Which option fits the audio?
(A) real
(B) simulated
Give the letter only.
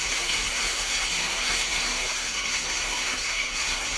B